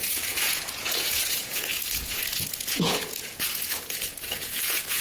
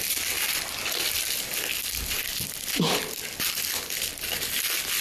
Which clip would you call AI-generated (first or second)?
first